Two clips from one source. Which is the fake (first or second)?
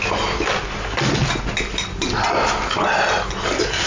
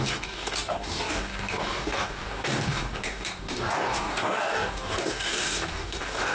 second